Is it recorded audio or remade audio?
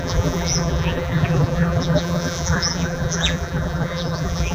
remade